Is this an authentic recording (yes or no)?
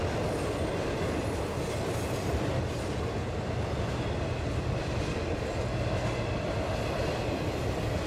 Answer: yes